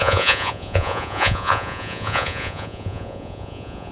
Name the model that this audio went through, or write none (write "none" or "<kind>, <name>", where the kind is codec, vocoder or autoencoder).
vocoder, Vocos